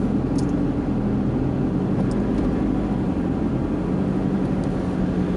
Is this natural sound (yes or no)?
yes